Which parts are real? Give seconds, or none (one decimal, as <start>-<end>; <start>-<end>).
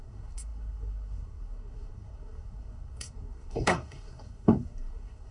none